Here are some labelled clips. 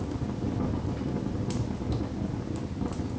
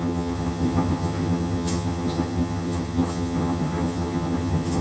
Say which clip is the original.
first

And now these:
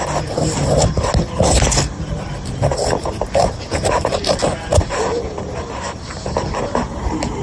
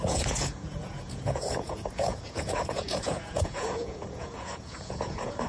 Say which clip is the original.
first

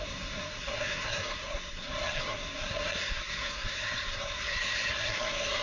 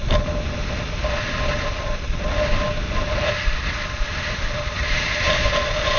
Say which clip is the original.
second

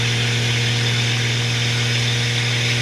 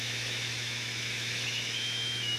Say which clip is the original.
first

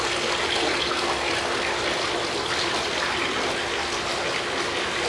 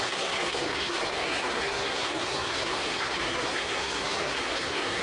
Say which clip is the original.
first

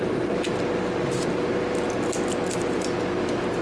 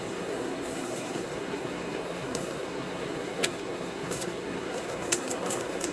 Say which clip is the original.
first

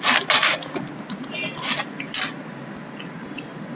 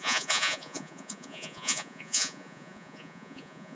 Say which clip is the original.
first